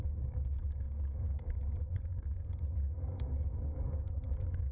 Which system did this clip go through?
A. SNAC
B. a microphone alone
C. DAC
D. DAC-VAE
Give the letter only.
C